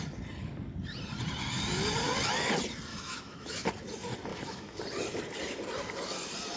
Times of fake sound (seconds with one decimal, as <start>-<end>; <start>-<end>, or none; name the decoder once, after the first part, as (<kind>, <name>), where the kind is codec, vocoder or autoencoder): 2.9-3.7 (autoencoder, DAC-VAE); 4.3-4.8